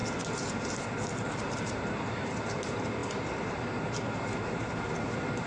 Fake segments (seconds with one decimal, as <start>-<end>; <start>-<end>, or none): 0.5-5.5